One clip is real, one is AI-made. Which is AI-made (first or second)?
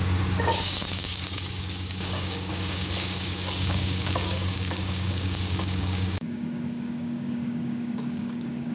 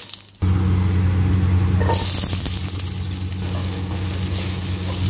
first